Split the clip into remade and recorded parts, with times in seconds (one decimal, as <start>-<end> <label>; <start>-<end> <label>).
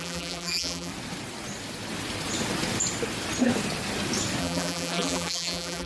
0.0-0.9 remade; 0.9-4.4 recorded; 4.4-5.9 remade